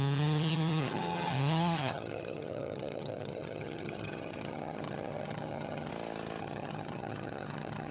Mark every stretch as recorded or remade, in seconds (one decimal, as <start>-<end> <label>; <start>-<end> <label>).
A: 0.0-5.9 remade; 5.9-6.4 recorded; 6.4-7.9 remade